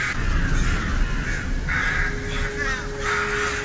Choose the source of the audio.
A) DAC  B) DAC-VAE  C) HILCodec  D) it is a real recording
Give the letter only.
D